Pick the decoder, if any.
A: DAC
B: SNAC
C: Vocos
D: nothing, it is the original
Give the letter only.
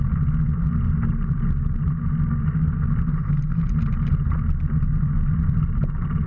D